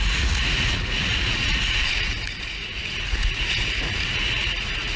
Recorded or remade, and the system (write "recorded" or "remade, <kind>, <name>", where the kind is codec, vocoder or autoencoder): remade, vocoder, Vocos